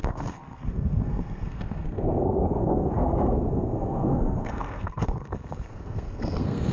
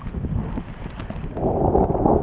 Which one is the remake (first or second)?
first